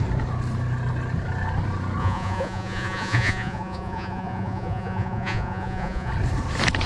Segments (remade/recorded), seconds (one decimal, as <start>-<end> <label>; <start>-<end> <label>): 0.0-2.0 recorded; 2.0-6.1 remade; 6.1-6.9 recorded